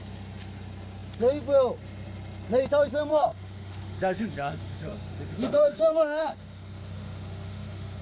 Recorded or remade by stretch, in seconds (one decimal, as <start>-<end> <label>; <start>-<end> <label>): 0.0-3.1 recorded; 3.1-8.0 remade